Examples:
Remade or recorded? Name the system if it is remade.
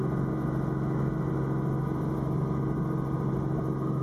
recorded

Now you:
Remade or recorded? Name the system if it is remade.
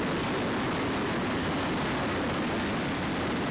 recorded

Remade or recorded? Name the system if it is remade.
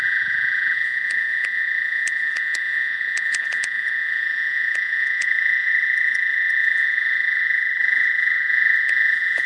remade, vocoder, Vocos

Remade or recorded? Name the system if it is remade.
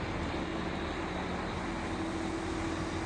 recorded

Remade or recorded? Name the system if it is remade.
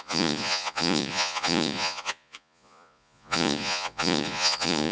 remade, vocoder, Vocos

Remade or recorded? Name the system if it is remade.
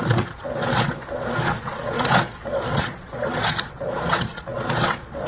remade, vocoder, Vocos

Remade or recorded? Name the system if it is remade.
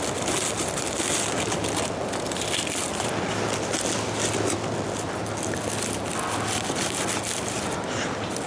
recorded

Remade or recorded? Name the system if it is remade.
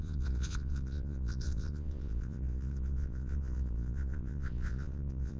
remade, vocoder, Vocos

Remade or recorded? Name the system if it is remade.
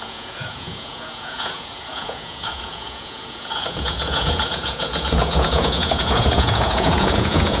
remade, vocoder, Vocos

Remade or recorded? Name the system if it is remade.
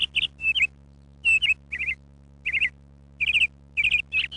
recorded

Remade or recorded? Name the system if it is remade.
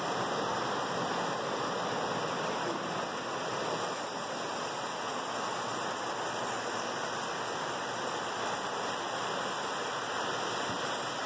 recorded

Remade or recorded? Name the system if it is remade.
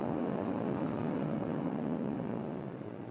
remade, vocoder, Vocos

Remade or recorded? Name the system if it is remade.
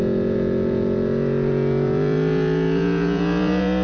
remade, vocoder, Vocos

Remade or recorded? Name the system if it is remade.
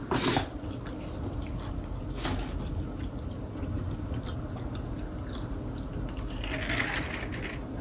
recorded